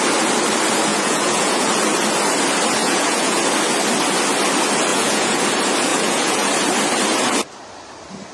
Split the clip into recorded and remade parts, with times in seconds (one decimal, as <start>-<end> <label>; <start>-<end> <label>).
0.0-0.9 recorded; 0.9-1.7 remade; 1.7-2.8 recorded; 2.8-3.4 remade; 3.4-4.9 recorded; 4.9-5.4 remade; 5.4-5.9 recorded; 5.9-6.5 remade; 6.5-8.3 recorded